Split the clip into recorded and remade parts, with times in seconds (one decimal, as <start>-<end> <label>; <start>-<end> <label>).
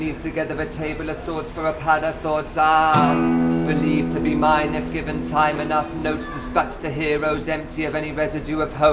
0.0-8.9 recorded